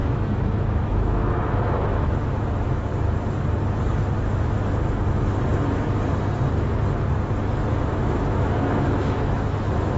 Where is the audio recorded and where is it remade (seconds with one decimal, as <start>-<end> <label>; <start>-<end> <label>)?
0.0-2.9 remade; 2.9-7.7 recorded; 7.7-10.0 remade